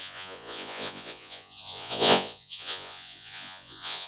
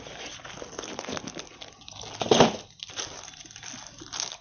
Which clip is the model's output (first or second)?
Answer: first